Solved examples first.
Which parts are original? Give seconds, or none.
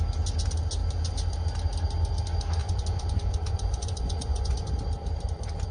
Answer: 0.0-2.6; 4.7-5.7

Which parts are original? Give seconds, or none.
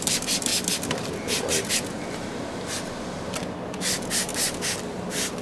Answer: 0.5-3.7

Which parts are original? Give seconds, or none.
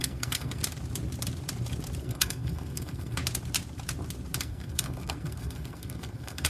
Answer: 0.6-2.0; 3.2-4.4